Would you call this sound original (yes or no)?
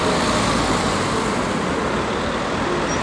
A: yes